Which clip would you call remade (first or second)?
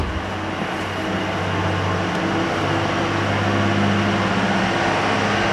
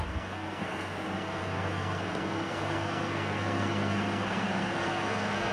second